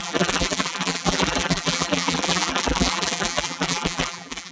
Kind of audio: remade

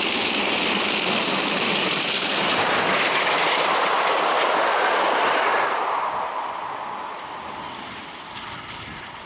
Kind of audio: remade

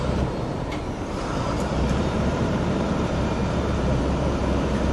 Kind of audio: remade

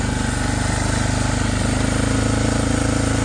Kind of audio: recorded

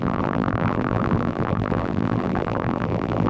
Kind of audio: remade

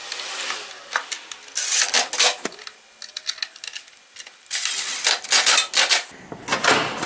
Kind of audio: recorded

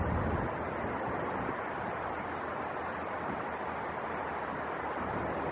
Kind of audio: recorded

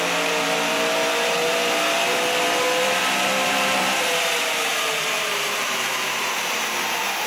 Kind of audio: remade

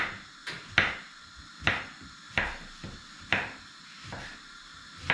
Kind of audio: recorded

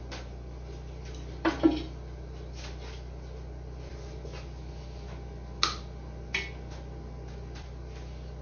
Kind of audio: recorded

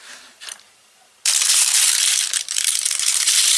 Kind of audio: remade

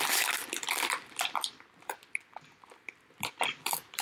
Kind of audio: remade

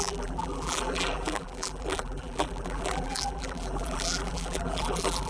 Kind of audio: remade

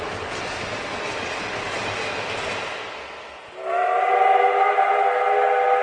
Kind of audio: recorded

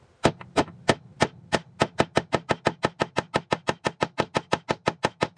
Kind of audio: recorded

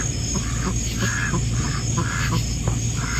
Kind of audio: recorded